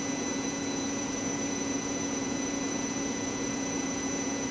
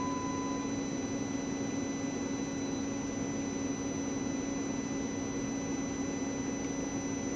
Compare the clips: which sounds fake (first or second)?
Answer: first